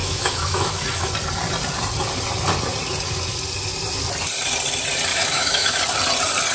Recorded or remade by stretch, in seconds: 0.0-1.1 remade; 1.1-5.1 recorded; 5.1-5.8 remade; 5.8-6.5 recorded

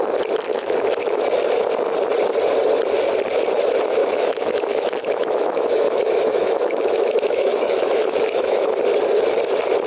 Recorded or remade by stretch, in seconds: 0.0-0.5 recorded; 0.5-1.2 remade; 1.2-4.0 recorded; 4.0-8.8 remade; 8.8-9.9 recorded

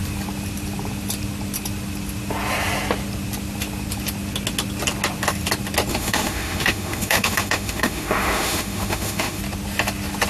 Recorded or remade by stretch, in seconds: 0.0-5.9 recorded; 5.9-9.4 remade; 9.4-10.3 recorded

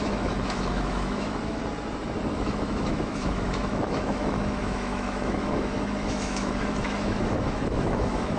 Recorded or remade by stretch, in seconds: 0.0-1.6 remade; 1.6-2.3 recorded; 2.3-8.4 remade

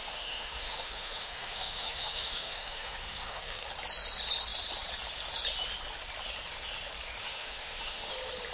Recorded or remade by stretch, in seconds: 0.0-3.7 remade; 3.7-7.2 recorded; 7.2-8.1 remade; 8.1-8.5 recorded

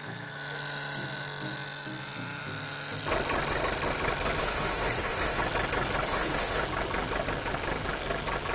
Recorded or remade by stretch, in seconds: 0.0-4.4 recorded; 4.4-5.4 remade; 5.4-6.1 recorded; 6.1-6.6 remade; 6.6-8.5 recorded